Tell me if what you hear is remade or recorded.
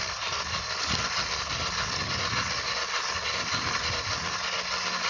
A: recorded